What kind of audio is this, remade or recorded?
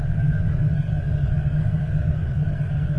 remade